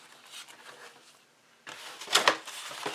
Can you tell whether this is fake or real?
real